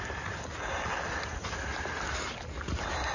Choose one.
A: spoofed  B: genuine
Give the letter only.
B